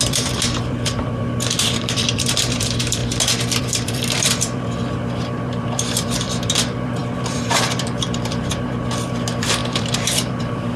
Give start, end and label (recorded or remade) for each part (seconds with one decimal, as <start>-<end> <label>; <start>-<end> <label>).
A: 0.0-3.0 remade; 3.0-3.6 recorded; 3.6-10.8 remade